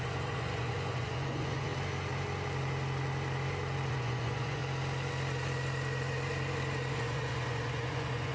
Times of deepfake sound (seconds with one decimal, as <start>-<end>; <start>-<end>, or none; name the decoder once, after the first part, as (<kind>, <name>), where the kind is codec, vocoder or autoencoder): 0.0-1.7 (vocoder, Vocos); 3.9-4.6; 6.9-8.3